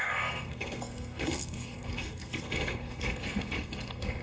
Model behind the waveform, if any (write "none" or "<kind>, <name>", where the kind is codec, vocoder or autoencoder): codec, SNAC